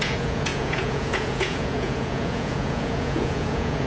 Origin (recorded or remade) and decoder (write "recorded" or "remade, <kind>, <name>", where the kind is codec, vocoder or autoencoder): remade, vocoder, Vocos